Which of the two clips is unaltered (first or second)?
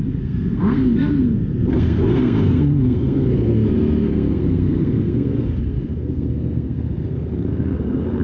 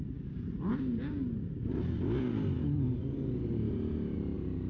second